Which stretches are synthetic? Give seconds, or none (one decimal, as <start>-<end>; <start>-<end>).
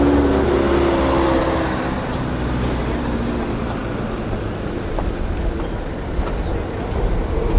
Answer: none